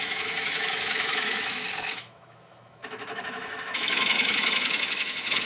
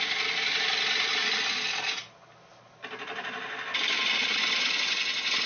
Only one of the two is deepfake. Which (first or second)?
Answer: first